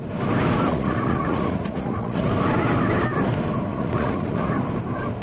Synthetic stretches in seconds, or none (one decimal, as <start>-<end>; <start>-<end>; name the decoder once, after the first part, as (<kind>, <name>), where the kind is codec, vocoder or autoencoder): 0.7-2.3 (vocoder, Vocos); 3.7-4.5